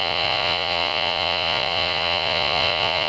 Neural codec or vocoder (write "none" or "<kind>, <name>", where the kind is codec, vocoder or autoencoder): vocoder, Vocos